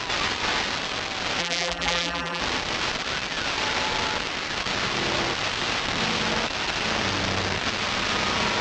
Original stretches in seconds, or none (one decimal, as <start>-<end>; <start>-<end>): 0.0-1.4; 2.4-8.6